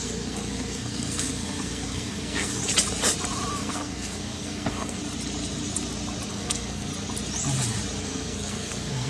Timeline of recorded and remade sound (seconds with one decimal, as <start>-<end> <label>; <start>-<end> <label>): 0.0-2.6 remade; 2.6-3.5 recorded; 3.5-5.0 remade; 5.0-6.3 recorded; 6.3-6.9 remade; 6.9-8.0 recorded; 8.0-9.1 remade